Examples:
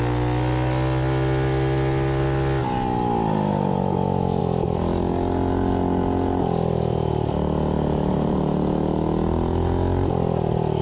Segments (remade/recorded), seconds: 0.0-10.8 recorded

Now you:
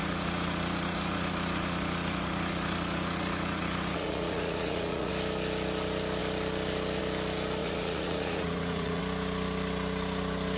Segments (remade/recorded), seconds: 0.0-5.1 remade; 5.1-7.6 recorded; 7.6-9.0 remade; 9.0-10.6 recorded

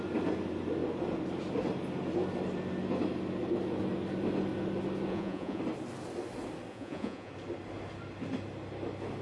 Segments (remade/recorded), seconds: 0.0-5.1 recorded; 5.1-5.6 remade; 5.6-6.7 recorded; 6.7-7.3 remade; 7.3-9.2 recorded

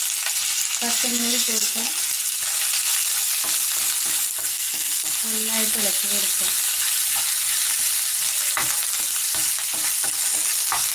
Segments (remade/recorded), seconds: 0.0-1.1 recorded; 1.1-1.9 remade; 1.9-4.5 recorded; 4.5-5.1 remade; 5.1-10.9 recorded